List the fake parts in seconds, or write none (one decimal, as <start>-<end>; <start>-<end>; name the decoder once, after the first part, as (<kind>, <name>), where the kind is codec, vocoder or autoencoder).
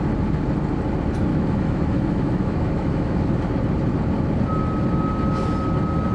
1.3-3.3 (autoencoder, DAC-VAE)